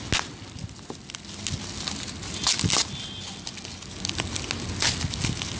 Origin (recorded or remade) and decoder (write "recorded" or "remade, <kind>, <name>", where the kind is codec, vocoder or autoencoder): recorded